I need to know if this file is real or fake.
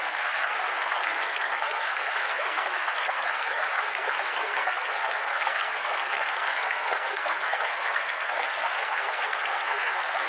fake